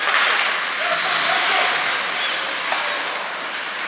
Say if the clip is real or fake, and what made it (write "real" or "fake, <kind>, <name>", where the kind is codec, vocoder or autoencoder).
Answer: real